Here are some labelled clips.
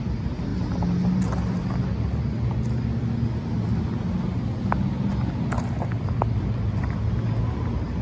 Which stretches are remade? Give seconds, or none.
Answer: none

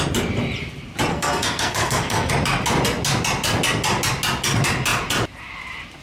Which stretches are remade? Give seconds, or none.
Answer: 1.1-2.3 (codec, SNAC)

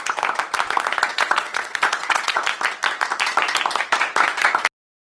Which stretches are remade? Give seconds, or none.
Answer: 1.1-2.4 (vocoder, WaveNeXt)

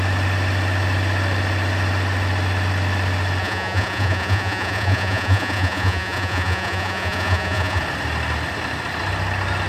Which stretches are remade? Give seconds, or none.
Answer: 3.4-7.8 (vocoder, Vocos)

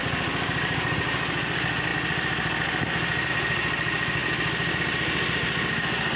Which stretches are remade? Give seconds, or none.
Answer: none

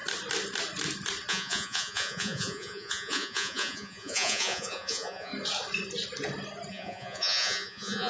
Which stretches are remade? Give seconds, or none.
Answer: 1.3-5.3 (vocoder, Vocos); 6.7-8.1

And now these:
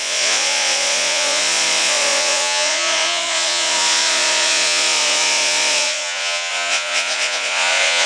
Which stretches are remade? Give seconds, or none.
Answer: 0.0-8.1 (vocoder, Vocos)

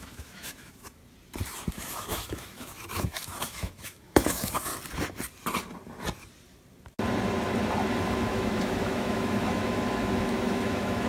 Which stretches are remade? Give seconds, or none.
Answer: 0.0-1.0 (autoencoder, DAC-VAE); 1.7-4.7; 8.0-11.1